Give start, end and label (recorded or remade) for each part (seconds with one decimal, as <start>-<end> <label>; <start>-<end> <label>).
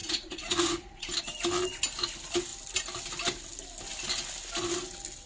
0.0-1.2 remade; 1.2-5.3 recorded